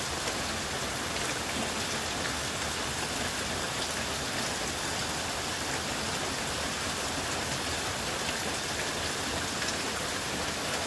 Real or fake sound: real